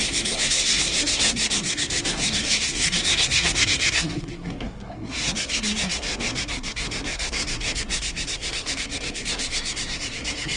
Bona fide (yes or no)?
no